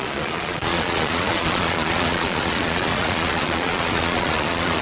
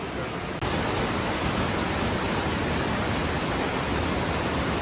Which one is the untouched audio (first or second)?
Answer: second